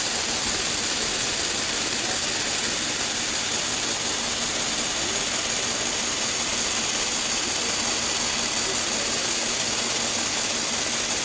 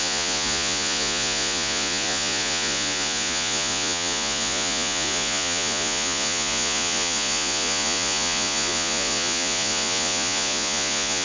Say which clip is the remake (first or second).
second